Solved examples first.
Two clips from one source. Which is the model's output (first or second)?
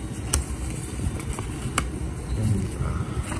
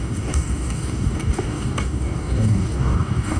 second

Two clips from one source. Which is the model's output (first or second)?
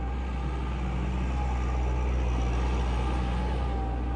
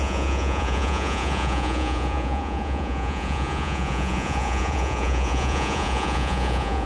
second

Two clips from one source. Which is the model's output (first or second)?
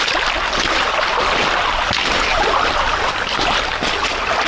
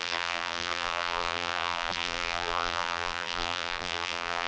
second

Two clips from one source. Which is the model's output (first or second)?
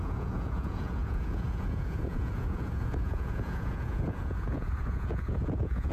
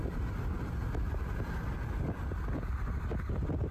first